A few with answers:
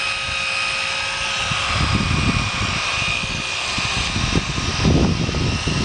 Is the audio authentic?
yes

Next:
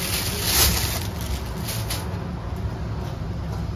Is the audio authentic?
yes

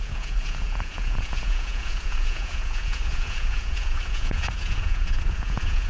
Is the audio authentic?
no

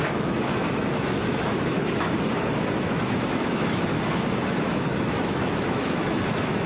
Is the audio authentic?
no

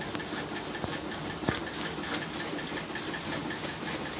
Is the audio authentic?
yes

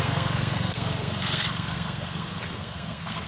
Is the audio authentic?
no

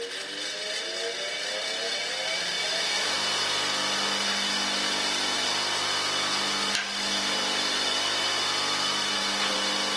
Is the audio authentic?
yes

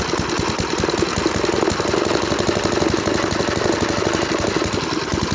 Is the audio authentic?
yes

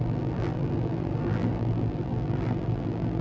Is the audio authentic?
no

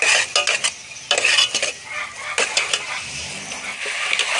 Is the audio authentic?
yes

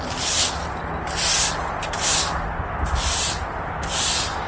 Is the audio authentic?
yes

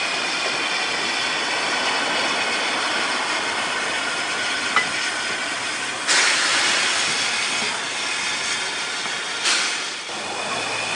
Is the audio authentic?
yes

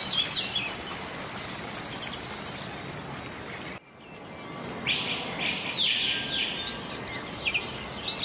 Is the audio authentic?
yes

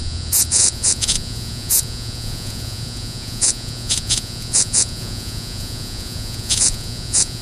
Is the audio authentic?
no